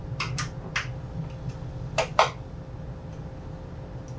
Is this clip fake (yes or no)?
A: no